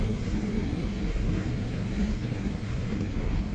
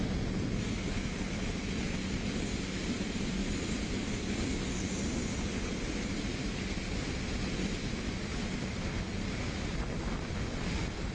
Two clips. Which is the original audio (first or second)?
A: second